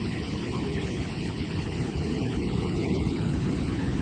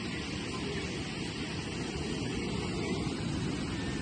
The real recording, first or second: second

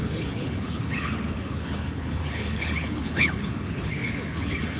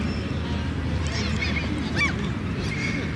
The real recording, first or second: second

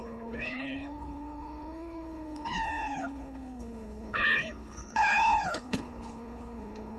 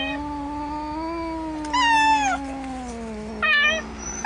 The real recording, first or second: second